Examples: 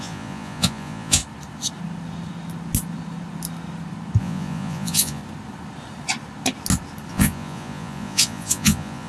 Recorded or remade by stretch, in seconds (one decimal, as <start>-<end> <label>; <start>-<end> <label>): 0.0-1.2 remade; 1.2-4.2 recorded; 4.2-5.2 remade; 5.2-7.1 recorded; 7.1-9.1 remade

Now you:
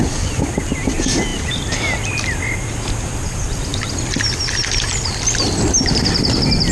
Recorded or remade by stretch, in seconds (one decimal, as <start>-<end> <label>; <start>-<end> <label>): 0.0-6.7 recorded

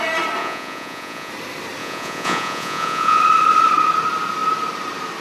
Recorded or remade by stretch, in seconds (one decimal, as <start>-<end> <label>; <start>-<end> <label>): 0.0-0.4 recorded; 0.4-1.3 remade; 1.3-1.8 recorded; 1.8-3.2 remade; 3.2-5.2 recorded

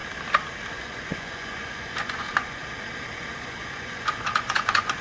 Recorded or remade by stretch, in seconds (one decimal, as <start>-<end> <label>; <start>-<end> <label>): 0.0-0.7 recorded; 0.7-2.6 remade; 2.6-3.3 recorded; 3.3-5.0 remade